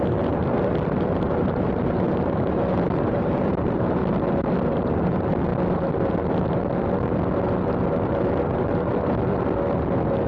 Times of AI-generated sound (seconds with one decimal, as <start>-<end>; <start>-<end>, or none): 0.0-4.0; 4.7-5.5